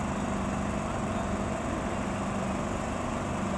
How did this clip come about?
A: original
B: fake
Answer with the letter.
A